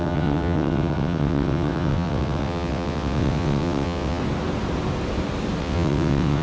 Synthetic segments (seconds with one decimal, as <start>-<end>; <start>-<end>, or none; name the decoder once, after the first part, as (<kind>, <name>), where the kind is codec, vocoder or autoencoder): 0.0-4.2 (vocoder, WaveNeXt); 5.6-6.4